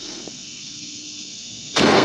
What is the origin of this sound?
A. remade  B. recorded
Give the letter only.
A